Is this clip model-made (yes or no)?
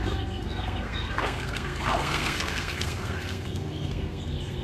yes